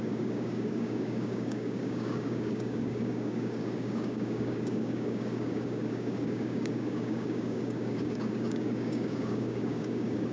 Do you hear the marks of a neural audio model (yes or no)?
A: yes